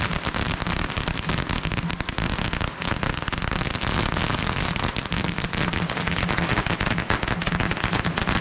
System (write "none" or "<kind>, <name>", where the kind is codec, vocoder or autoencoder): none